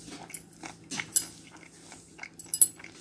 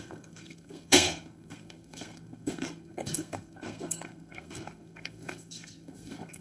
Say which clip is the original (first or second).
first